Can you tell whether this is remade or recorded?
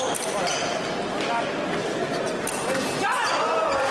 recorded